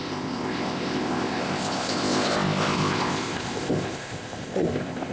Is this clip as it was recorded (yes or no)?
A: no